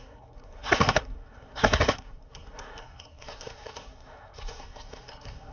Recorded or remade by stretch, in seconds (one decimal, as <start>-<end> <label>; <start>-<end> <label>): 0.0-5.5 remade